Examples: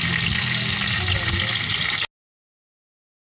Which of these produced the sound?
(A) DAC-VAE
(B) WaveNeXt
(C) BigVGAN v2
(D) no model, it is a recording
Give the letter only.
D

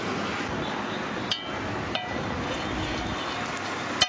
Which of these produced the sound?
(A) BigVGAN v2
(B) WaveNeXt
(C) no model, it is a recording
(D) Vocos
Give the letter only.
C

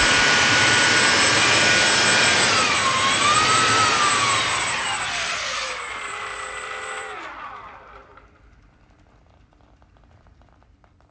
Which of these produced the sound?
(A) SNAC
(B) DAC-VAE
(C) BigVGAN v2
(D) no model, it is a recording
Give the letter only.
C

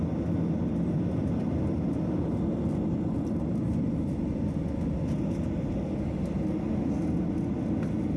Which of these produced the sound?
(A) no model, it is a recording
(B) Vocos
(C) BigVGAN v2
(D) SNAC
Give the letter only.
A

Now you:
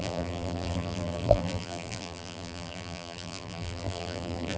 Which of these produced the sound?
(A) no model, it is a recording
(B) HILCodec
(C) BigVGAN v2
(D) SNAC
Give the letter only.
C